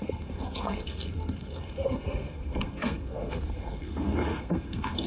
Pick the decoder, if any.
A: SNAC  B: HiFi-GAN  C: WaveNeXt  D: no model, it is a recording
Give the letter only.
A